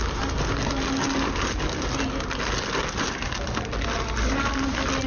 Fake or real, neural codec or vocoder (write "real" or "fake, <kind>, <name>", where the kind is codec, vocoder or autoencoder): real